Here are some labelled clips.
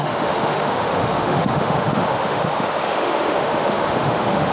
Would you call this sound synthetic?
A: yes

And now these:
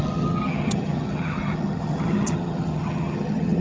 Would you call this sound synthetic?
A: yes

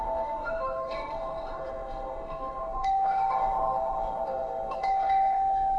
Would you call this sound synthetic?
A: yes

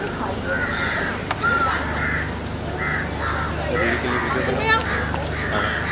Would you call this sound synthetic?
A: no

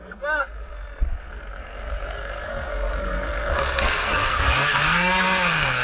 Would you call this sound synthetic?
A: yes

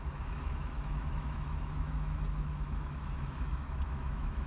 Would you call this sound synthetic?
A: yes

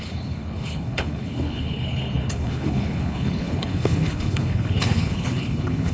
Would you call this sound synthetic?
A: yes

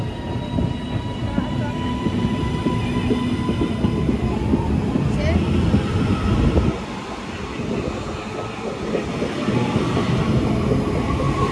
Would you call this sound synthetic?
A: no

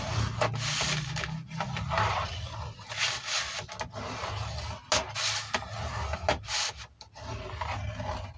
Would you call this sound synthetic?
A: no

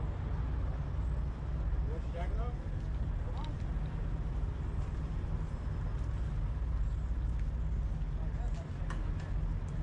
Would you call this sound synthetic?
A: no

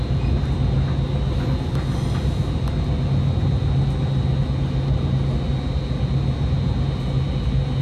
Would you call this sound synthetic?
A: no